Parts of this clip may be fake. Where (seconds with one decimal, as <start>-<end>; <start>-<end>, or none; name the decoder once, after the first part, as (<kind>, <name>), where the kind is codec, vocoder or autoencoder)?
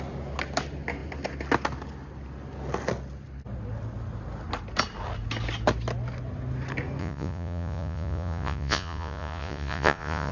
7.0-10.3 (vocoder, Vocos)